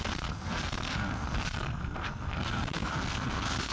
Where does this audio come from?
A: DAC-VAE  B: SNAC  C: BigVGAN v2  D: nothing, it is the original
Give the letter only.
B